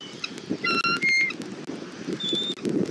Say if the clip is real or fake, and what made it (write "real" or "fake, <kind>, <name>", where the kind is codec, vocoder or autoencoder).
real